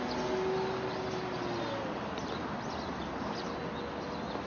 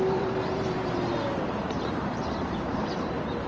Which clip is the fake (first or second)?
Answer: second